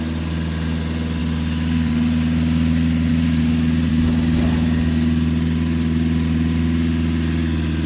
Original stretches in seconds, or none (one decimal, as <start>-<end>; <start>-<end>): 0.0-7.9